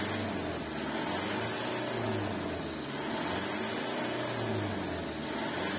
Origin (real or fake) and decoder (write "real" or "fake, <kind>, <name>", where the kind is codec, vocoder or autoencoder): real